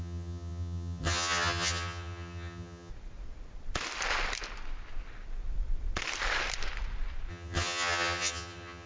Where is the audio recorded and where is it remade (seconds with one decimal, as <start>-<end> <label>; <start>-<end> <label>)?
0.0-2.9 remade; 2.9-7.3 recorded; 7.3-8.9 remade